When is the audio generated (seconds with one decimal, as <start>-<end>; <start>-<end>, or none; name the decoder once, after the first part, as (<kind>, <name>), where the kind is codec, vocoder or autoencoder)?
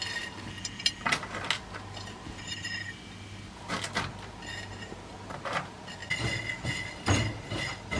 6.0-8.0 (vocoder, BigVGAN v2)